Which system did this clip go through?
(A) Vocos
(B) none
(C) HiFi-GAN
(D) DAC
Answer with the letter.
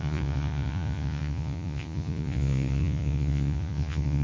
A